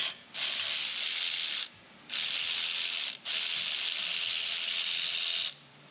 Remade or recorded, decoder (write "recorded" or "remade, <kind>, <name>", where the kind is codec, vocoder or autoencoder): recorded